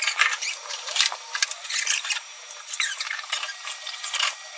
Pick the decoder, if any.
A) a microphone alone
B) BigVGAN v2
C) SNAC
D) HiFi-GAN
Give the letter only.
B